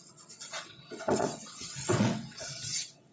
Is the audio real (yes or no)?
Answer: no